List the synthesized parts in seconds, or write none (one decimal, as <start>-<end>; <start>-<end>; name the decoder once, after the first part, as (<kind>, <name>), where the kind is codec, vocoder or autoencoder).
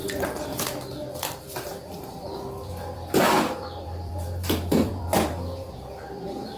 0.6-6.6 (vocoder, BigVGAN v2)